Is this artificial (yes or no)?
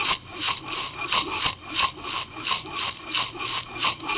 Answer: no